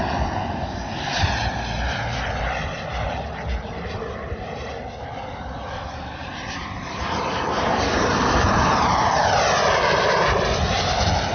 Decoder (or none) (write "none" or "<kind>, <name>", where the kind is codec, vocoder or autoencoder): vocoder, BigVGAN v2